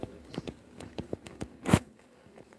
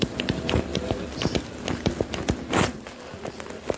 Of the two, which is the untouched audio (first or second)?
second